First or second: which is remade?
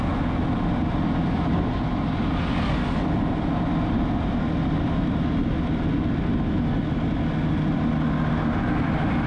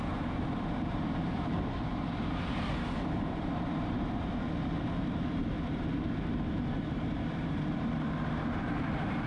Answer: second